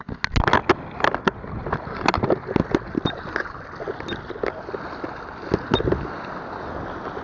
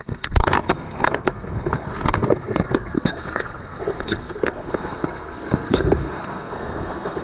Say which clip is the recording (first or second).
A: first